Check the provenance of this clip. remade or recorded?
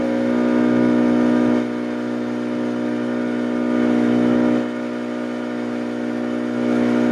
recorded